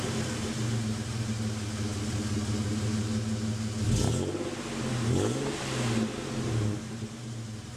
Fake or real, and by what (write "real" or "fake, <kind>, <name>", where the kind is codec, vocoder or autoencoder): real